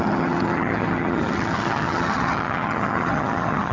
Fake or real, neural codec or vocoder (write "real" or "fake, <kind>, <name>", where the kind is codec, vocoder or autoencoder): fake, vocoder, HiFi-GAN